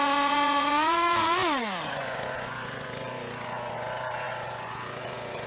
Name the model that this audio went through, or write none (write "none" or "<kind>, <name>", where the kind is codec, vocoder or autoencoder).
vocoder, Vocos